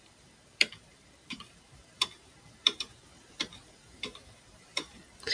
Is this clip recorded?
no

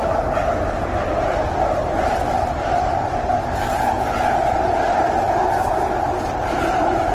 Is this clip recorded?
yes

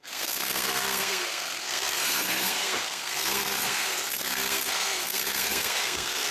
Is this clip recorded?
no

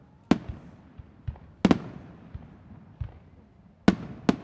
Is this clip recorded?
yes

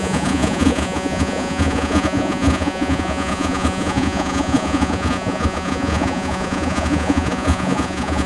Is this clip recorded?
no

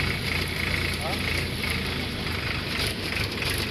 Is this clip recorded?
no